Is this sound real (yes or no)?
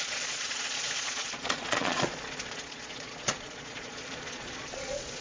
no